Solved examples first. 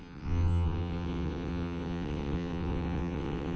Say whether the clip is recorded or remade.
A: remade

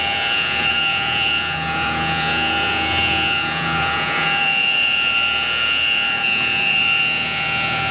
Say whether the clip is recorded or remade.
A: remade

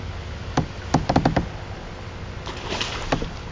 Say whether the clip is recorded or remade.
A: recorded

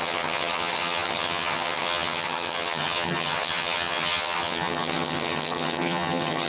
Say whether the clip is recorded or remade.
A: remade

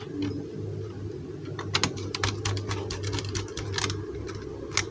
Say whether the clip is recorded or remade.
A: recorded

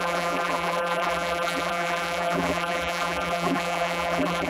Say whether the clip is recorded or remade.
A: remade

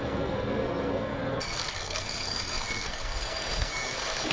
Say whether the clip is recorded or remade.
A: remade